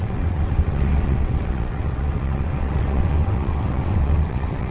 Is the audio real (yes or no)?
no